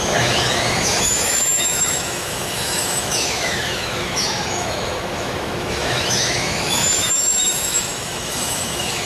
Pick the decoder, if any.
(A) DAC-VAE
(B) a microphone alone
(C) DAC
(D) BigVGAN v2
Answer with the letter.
A